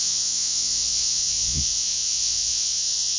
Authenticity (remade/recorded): remade